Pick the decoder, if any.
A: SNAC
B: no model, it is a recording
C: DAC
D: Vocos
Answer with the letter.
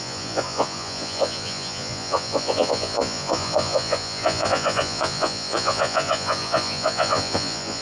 D